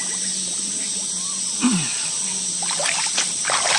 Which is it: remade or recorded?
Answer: recorded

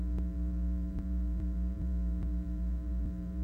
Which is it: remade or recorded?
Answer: remade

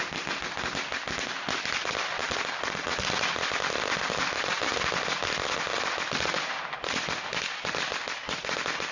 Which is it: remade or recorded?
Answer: recorded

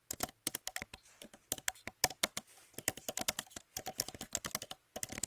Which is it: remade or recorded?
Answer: recorded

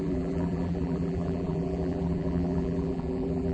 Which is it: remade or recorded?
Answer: remade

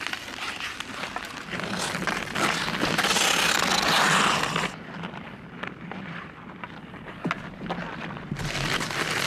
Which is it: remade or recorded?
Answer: recorded